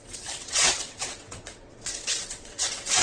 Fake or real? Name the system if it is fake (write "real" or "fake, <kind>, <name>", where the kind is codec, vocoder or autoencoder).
fake, vocoder, WaveNeXt